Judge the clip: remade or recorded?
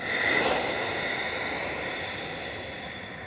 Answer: recorded